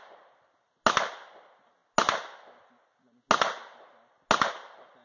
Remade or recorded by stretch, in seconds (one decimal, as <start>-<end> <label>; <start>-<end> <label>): 0.0-5.0 recorded